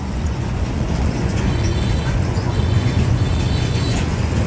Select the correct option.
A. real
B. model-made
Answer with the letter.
B